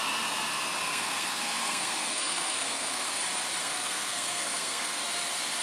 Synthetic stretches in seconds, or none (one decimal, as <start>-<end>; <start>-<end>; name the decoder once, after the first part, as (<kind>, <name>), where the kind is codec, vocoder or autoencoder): 0.8-3.2 (codec, SNAC); 3.6-5.0